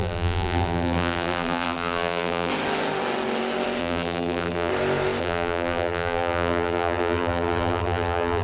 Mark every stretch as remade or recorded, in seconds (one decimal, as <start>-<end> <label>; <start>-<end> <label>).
0.0-2.5 remade; 2.5-3.8 recorded; 3.8-4.7 remade; 4.7-5.2 recorded; 5.2-8.4 remade